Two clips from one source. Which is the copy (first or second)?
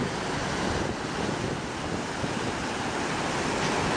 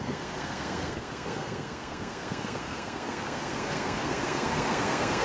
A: second